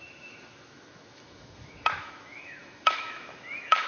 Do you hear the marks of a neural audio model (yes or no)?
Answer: yes